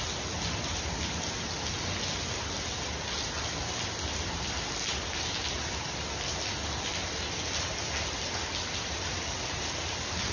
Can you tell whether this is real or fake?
real